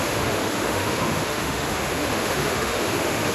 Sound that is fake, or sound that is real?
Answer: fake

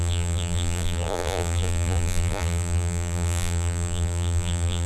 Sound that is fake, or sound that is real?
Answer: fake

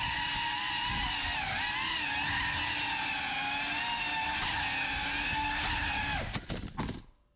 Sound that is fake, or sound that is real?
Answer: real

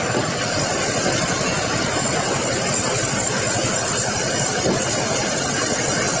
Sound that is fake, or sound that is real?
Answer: real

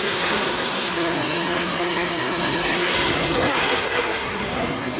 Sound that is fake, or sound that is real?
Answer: fake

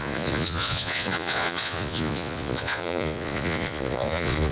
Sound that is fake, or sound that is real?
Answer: fake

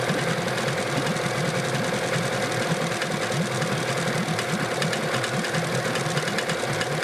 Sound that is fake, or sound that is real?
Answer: real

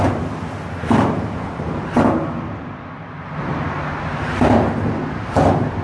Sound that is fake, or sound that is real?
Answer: real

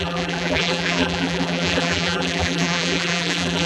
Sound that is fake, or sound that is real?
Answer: fake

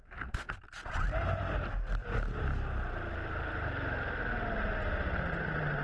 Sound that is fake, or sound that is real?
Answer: real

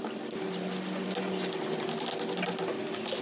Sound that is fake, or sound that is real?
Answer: real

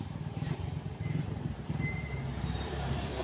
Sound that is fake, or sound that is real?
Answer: fake